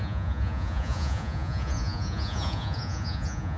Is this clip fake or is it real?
fake